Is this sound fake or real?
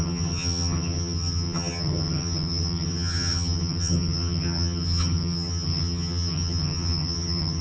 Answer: fake